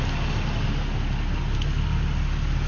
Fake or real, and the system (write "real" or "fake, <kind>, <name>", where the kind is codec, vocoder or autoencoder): real